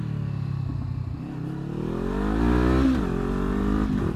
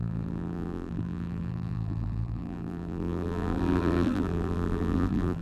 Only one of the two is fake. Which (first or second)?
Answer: second